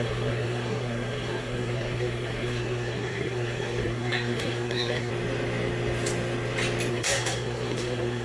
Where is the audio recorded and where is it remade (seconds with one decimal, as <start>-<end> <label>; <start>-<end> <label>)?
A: 0.0-5.1 remade; 5.1-6.9 recorded; 6.9-8.2 remade

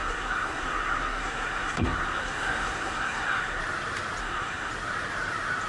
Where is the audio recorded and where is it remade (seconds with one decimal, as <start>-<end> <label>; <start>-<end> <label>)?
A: 0.0-3.6 remade; 3.6-4.2 recorded; 4.2-4.7 remade; 4.7-5.7 recorded